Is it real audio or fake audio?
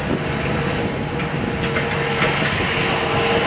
real